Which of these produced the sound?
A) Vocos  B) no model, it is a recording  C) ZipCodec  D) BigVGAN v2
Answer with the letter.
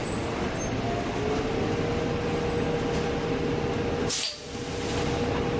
B